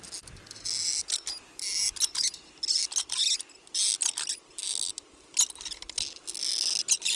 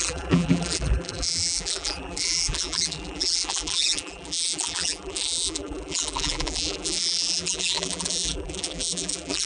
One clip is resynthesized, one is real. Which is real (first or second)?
first